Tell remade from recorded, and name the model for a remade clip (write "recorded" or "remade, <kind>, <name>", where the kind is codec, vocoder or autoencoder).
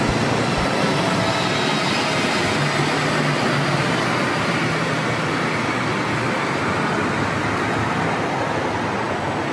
recorded